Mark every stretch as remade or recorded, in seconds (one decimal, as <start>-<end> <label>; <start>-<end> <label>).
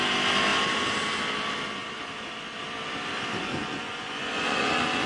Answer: 0.0-3.5 recorded; 3.5-5.1 remade